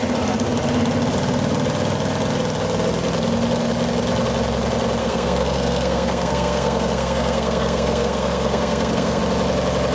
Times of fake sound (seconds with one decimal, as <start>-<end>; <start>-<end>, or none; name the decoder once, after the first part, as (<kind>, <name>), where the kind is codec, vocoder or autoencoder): 5.0-9.2 (codec, SNAC)